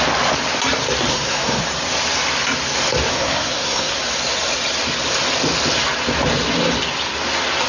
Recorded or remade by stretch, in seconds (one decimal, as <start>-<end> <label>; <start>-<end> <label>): 0.0-1.1 recorded; 1.1-1.6 remade; 1.6-3.1 recorded; 3.1-3.9 remade; 3.9-7.7 recorded